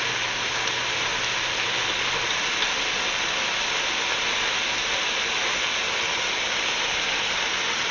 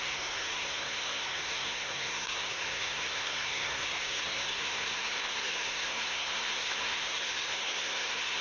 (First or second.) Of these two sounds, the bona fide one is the first